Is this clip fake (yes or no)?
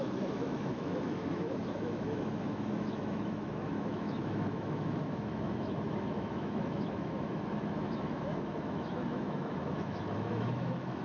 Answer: yes